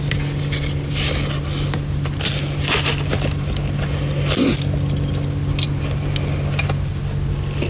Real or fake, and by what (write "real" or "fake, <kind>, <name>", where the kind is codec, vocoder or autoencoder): real